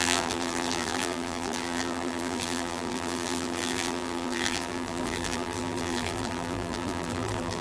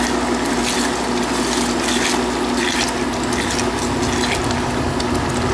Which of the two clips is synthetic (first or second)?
first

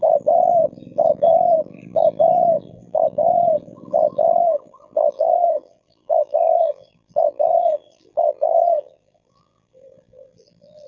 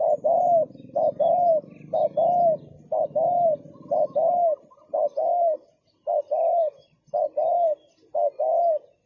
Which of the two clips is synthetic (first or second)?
first